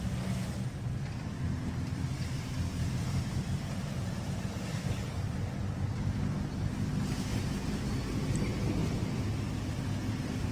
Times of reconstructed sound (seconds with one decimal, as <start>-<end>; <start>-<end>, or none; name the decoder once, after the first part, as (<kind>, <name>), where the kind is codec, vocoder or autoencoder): 2.7-4.8 (vocoder, BigVGAN v2); 7.3-8.2